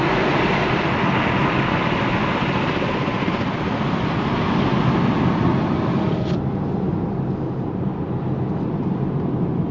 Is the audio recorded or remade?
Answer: recorded